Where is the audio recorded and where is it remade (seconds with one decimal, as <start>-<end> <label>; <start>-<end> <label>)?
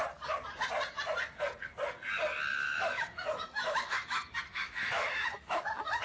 0.0-2.5 recorded; 2.5-5.6 remade; 5.6-6.0 recorded